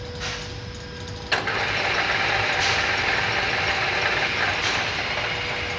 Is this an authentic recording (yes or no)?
yes